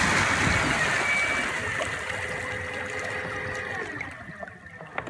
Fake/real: real